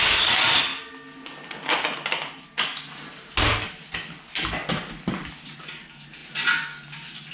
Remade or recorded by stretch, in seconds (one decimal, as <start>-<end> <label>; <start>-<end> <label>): 0.0-7.3 recorded